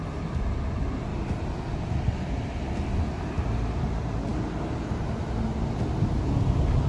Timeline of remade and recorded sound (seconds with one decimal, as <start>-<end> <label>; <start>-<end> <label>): 0.0-1.1 recorded; 1.1-2.3 remade; 2.3-6.9 recorded